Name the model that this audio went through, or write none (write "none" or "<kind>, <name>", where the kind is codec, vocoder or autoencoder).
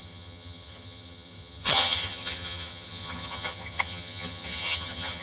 vocoder, HiFi-GAN